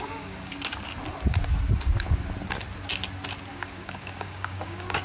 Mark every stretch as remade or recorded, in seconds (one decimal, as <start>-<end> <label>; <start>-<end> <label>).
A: 0.0-0.5 remade; 0.5-3.5 recorded; 3.5-5.0 remade

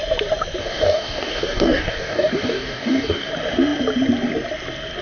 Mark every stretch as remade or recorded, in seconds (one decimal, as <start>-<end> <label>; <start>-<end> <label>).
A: 0.0-0.6 recorded; 0.6-3.3 remade; 3.3-5.0 recorded